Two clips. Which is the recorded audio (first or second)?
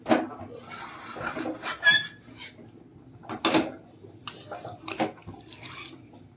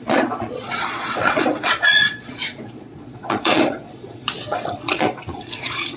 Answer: first